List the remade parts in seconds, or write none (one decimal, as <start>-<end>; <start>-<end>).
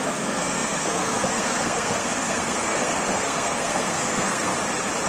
0.0-4.5